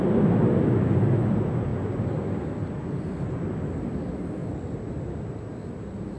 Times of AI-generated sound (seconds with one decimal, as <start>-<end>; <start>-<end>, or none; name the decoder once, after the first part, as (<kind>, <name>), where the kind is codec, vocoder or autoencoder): none